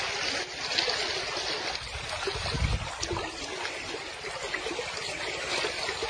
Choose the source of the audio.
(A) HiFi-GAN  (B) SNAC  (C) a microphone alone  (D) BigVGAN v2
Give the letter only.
C